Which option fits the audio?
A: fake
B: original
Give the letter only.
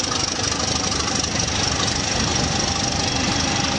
B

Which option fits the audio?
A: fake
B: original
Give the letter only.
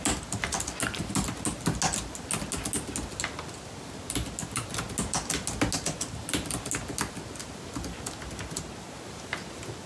B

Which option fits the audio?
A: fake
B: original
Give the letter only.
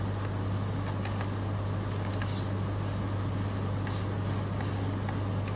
B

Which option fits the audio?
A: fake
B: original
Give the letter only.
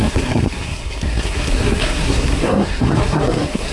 A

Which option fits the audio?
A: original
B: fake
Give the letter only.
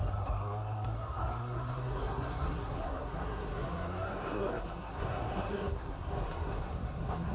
B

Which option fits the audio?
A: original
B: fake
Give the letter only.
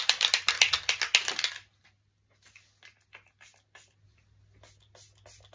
A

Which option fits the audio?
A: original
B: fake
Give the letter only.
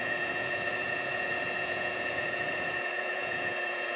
B